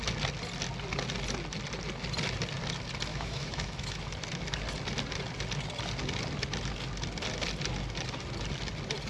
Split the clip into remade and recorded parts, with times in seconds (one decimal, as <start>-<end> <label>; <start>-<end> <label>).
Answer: 0.0-3.1 recorded; 3.1-4.0 remade; 4.0-9.1 recorded